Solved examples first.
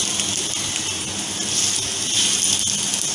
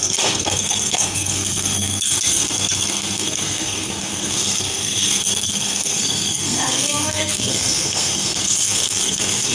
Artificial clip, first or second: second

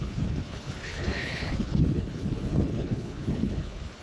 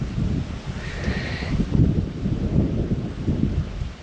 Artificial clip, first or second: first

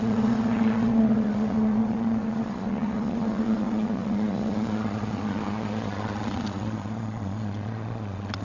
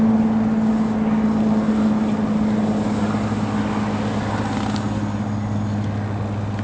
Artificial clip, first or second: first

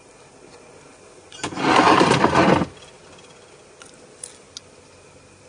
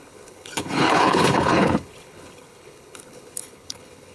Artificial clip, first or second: second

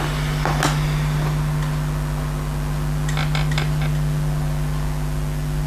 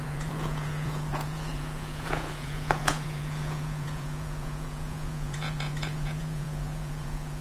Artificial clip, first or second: second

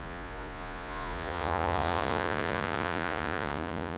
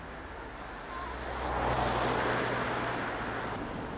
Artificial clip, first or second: first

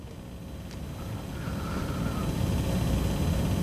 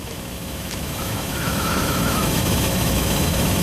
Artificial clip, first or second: second